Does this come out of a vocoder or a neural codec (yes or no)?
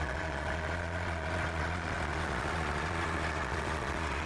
yes